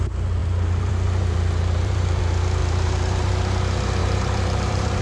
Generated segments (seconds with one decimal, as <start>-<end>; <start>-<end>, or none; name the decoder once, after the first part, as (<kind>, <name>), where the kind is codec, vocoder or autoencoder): 0.4-2.2 (vocoder, BigVGAN v2); 2.6-3.3; 4.0-5.0